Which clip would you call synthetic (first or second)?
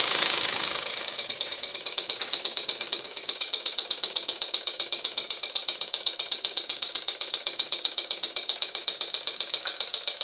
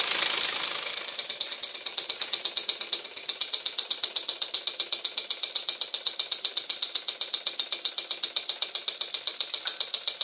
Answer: first